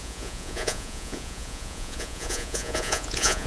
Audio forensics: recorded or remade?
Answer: remade